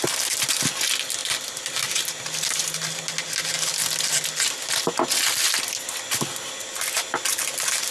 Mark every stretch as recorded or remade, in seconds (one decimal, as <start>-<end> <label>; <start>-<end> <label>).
0.0-7.9 recorded